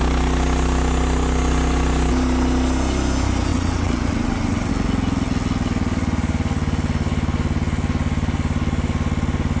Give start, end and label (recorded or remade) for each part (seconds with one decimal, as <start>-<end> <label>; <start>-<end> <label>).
0.0-3.5 recorded; 3.5-4.7 remade; 4.7-9.6 recorded